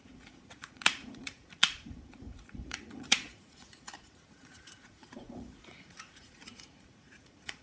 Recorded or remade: remade